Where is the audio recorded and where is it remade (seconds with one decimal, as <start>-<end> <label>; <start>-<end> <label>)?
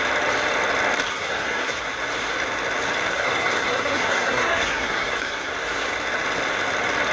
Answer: 0.0-1.1 recorded; 1.1-1.8 remade; 1.8-3.1 recorded; 3.1-5.5 remade; 5.5-7.1 recorded